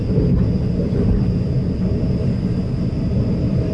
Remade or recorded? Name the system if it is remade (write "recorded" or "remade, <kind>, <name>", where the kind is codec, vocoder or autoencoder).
recorded